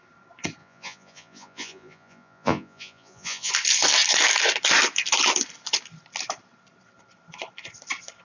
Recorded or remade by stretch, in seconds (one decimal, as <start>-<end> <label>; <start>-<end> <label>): 0.0-0.6 recorded; 0.6-3.5 remade; 3.5-8.2 recorded